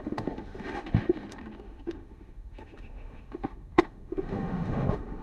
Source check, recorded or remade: remade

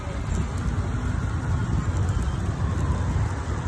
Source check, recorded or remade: recorded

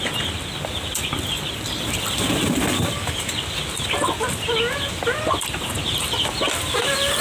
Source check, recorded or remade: recorded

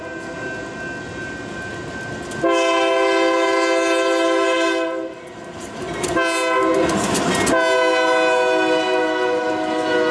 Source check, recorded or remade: recorded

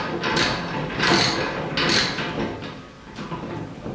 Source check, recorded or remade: recorded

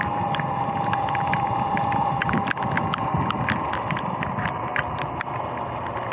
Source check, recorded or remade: recorded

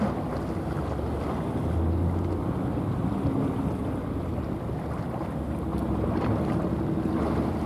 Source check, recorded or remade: recorded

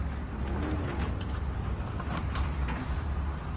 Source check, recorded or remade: recorded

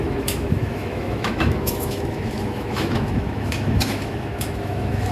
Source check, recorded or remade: remade